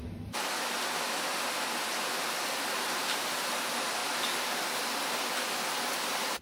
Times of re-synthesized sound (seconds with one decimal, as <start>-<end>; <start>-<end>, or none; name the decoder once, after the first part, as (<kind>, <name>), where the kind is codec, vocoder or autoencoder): none